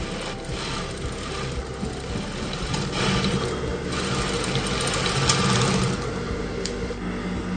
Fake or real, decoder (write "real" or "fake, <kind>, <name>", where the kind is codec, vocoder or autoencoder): real